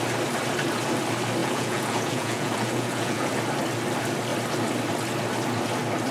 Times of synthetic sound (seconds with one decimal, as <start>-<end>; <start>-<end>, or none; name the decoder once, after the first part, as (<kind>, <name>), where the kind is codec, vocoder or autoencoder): 1.4-3.3 (vocoder, Vocos)